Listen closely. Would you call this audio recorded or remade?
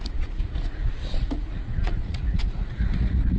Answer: remade